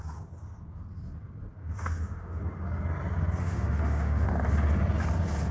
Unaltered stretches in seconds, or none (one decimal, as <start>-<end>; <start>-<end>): 0.0-1.6; 2.4-3.4; 4.3-5.5